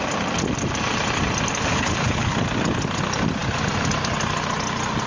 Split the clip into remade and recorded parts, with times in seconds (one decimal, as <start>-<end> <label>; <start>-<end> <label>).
0.0-1.7 recorded; 1.7-2.4 remade; 2.4-5.1 recorded